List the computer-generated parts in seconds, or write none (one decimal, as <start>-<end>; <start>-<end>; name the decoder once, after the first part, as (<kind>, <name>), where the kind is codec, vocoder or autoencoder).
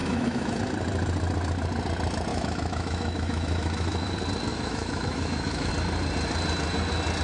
0.0-0.6 (autoencoder, DAC-VAE); 2.3-4.1; 4.5-5.7